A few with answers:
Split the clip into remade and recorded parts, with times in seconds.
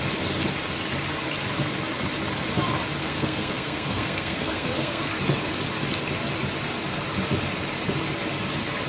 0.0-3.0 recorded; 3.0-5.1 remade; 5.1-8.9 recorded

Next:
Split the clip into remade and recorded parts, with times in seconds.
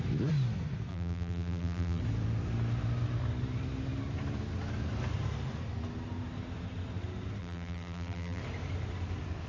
0.0-0.9 recorded; 0.9-2.0 remade; 2.0-7.4 recorded; 7.4-8.4 remade; 8.4-9.5 recorded